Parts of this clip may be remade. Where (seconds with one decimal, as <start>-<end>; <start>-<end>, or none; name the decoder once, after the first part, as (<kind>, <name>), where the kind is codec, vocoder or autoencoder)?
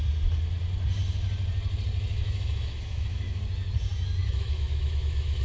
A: 2.1-3.4 (autoencoder, DAC-VAE); 4.2-5.4